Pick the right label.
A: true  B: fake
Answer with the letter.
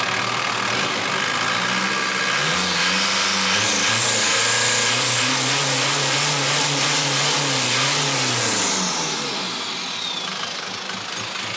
A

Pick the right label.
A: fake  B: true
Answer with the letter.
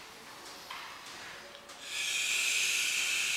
B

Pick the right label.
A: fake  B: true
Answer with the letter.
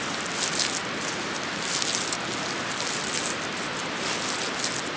B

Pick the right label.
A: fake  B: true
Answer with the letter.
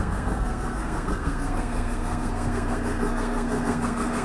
A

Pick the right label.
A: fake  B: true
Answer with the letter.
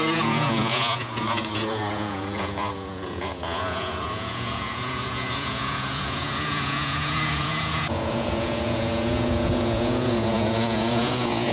A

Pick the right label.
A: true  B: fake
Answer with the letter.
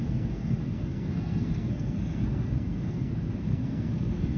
B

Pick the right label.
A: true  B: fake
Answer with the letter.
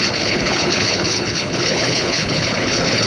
B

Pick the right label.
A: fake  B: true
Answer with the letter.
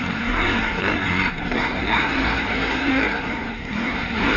A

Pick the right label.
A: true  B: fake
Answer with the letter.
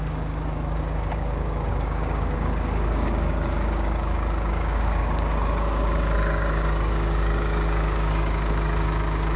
B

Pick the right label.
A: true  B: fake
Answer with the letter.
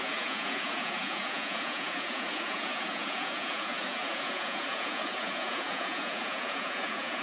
B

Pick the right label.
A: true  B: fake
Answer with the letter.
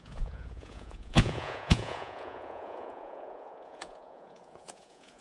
B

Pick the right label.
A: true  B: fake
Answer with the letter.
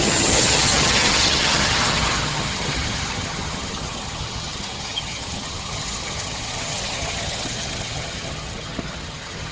B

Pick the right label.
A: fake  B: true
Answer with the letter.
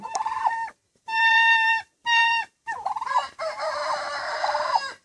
A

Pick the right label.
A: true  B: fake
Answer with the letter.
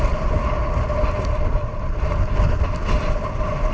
A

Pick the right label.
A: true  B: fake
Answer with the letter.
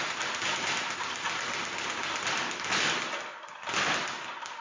A